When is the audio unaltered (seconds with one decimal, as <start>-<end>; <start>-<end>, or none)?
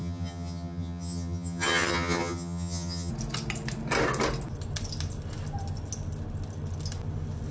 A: 3.1-7.5